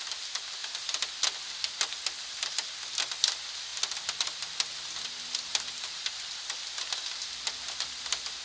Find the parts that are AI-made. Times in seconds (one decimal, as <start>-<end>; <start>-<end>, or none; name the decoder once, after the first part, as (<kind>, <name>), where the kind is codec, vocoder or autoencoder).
none